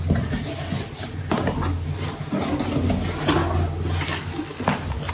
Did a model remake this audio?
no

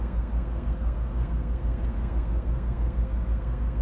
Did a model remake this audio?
yes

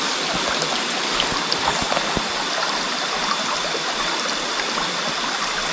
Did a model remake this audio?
no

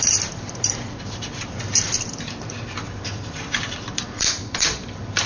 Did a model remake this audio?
yes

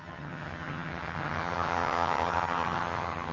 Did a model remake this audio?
yes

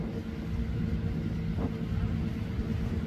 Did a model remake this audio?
no